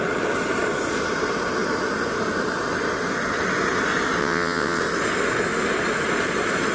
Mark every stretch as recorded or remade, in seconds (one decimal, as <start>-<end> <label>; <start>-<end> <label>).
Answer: 0.0-4.2 recorded; 4.2-4.8 remade; 4.8-6.7 recorded